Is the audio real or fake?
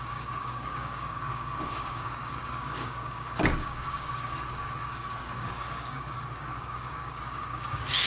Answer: fake